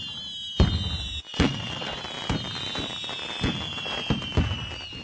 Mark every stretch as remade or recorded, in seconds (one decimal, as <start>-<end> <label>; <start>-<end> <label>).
0.0-1.3 recorded; 1.3-2.0 remade; 2.0-5.0 recorded